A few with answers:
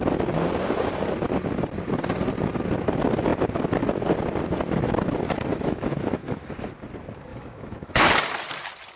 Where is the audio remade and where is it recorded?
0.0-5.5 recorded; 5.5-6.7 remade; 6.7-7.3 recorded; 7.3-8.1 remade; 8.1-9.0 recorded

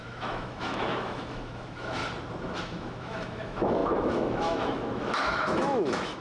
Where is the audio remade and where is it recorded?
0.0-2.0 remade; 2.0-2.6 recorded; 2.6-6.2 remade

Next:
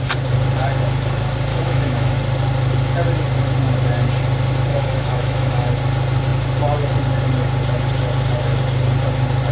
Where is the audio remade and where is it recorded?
0.0-1.5 recorded; 1.5-2.1 remade; 2.1-4.7 recorded; 4.7-5.7 remade; 5.7-9.5 recorded

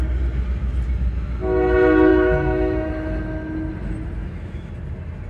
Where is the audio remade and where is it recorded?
0.0-2.1 recorded; 2.1-2.9 remade; 2.9-4.2 recorded; 4.2-4.7 remade; 4.7-5.3 recorded